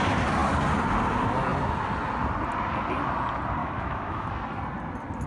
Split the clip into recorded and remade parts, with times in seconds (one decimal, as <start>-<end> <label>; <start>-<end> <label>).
0.0-3.6 recorded; 3.6-4.3 remade; 4.3-5.3 recorded